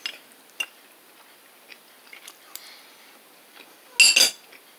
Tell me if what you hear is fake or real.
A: real